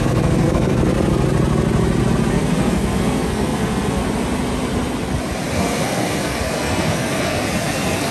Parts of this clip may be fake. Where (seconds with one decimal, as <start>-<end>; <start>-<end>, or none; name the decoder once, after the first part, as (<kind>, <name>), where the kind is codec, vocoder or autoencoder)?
0.0-0.9 (codec, SNAC); 2.3-4.0; 5.5-8.1